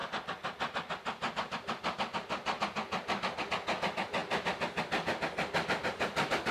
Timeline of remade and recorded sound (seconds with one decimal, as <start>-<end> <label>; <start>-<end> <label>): 0.0-4.2 recorded; 4.2-4.8 remade; 4.8-6.5 recorded